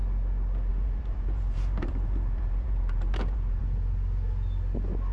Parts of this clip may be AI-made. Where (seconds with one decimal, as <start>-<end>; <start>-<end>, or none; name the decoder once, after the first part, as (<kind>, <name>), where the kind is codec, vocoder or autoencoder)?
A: 0.7-3.6 (vocoder, BigVGAN v2)